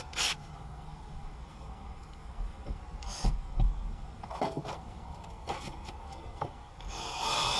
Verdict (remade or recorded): remade